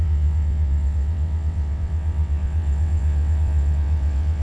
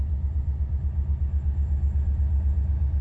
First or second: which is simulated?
first